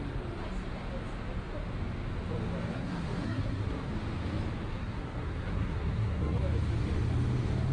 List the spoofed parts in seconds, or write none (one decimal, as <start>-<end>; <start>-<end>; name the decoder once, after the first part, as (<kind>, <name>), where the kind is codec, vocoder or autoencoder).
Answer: 2.7-3.9 (codec, SNAC); 4.7-6.4